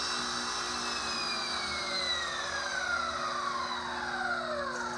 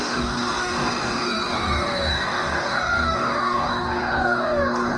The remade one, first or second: second